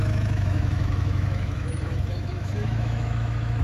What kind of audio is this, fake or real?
fake